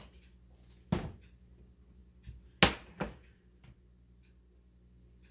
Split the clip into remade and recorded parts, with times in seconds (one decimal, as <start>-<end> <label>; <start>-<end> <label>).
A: 0.0-5.3 recorded